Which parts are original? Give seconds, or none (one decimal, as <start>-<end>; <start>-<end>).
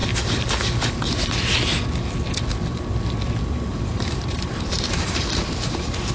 0.0-3.7